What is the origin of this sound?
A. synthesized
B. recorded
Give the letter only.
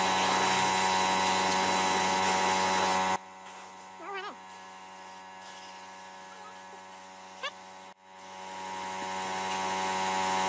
B